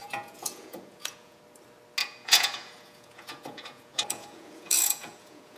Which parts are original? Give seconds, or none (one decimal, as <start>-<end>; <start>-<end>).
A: 1.4-2.0